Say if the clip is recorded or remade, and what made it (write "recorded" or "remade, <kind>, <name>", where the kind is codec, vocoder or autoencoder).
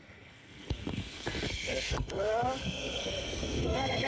remade, codec, SNAC